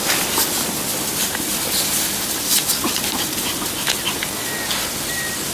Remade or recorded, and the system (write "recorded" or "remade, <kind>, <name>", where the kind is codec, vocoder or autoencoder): recorded